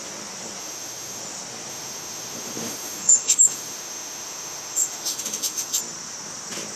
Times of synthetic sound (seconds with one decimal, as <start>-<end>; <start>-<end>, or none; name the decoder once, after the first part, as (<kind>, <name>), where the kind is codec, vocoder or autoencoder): 0.6-1.2 (autoencoder, DAC-VAE); 1.7-5.8